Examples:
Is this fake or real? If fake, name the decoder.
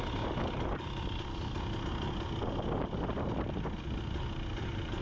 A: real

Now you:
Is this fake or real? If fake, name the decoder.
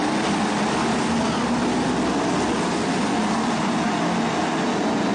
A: real